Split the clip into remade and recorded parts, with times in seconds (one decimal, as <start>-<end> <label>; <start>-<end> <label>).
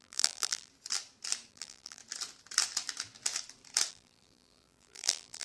0.0-0.7 remade; 0.7-1.5 recorded; 1.5-2.0 remade; 2.0-3.9 recorded; 3.9-5.4 remade